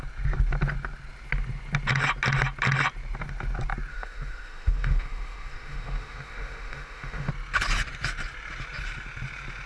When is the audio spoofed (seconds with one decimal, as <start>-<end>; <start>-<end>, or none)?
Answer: 3.9-7.3

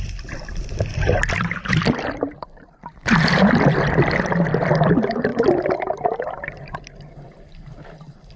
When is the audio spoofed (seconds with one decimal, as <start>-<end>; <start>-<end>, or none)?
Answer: 0.0-8.4

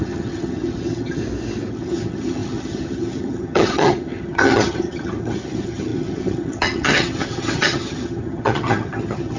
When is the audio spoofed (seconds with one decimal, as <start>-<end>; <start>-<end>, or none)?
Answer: 0.0-1.2; 1.7-9.4